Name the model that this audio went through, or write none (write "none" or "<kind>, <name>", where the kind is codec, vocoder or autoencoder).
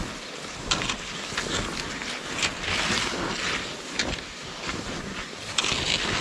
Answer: none